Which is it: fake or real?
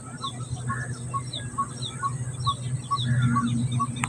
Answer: real